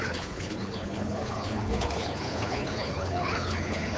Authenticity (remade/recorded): remade